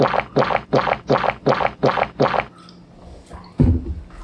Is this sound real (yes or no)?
yes